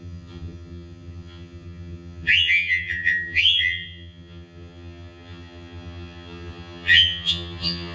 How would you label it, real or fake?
fake